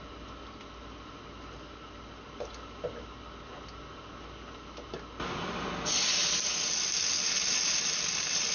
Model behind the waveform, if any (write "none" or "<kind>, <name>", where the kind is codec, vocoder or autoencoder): none